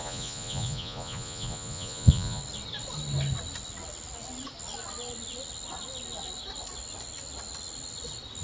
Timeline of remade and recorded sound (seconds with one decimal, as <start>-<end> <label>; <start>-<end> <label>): 0.0-2.4 remade; 2.4-8.4 recorded